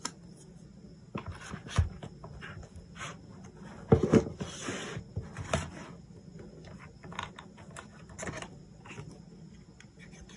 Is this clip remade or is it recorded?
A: recorded